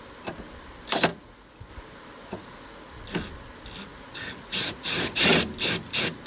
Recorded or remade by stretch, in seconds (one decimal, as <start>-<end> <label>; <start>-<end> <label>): 0.0-1.1 recorded; 1.1-1.7 remade; 1.7-2.2 recorded; 2.2-2.8 remade; 2.8-3.9 recorded; 3.9-5.3 remade; 5.3-6.3 recorded